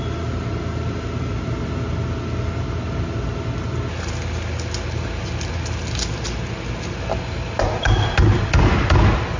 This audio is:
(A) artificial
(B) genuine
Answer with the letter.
B